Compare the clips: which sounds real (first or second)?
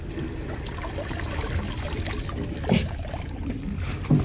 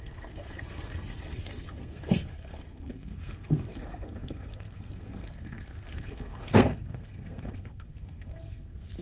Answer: first